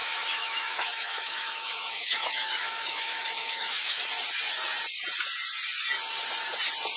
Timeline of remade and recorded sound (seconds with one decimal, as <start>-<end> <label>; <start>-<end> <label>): 0.0-4.1 remade; 4.1-7.0 recorded